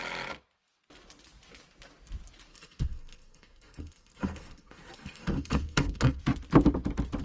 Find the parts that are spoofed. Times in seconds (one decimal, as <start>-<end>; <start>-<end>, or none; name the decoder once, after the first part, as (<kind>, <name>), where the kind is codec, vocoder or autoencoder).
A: 2.5-6.2 (codec, SNAC)